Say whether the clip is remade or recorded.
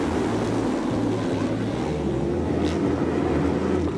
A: recorded